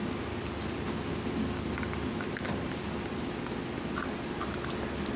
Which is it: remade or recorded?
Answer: recorded